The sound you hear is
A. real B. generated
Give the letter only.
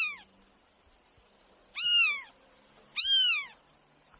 A